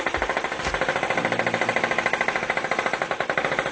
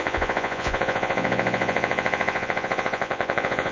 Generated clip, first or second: second